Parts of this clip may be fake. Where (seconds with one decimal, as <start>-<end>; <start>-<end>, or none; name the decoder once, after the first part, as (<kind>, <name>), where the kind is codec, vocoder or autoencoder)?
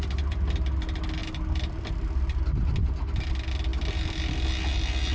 none